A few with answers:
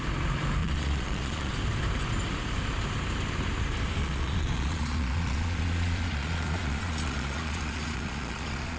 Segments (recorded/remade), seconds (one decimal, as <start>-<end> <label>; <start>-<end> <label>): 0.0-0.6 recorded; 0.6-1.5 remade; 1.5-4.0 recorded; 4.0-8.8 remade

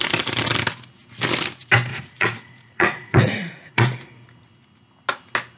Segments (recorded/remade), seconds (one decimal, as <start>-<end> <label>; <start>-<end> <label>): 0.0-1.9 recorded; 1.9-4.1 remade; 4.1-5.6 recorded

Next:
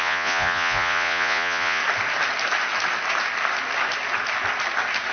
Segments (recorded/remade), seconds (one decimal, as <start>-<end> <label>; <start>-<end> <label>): 0.0-1.8 remade; 1.8-5.1 recorded

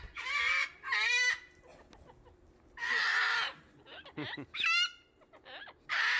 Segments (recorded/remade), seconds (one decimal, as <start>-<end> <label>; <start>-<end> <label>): 0.0-6.2 recorded

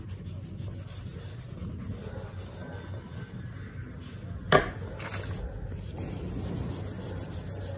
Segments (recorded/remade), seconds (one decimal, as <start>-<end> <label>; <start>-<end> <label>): 0.0-7.8 recorded